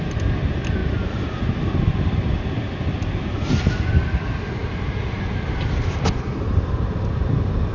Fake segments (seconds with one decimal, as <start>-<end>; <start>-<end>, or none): none

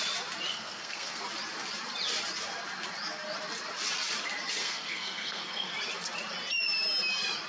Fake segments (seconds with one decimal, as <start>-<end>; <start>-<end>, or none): 0.5-1.2; 4.6-5.7